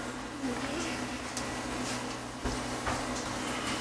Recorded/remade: recorded